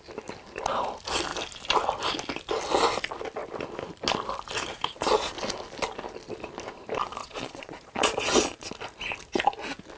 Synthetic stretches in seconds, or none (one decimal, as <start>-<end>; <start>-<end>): 4.7-5.3; 7.2-8.7